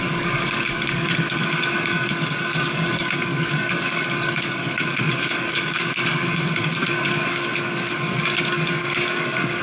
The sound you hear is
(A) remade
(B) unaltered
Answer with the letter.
A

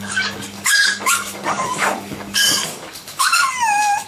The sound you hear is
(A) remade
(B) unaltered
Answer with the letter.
A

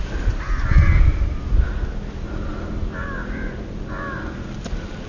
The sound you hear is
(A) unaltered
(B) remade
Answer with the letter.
A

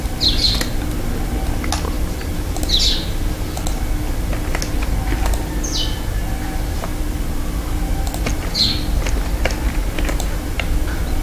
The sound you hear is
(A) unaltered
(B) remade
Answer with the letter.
A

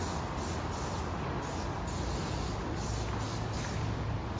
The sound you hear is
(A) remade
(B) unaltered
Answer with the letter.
B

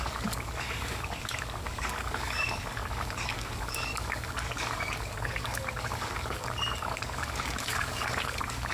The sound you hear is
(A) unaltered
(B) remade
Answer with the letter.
B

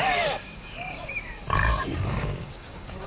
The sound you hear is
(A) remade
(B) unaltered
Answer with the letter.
A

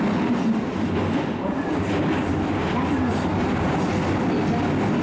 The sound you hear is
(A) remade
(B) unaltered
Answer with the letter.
B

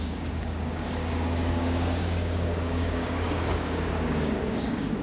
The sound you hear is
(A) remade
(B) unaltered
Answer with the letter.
A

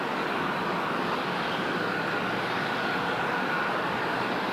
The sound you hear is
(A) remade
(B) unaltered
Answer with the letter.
A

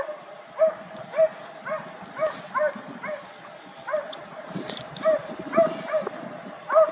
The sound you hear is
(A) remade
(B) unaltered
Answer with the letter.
B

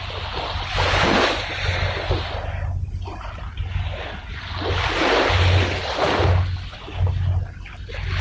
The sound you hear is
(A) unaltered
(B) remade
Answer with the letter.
A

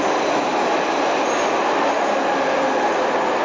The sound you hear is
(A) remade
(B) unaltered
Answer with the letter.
B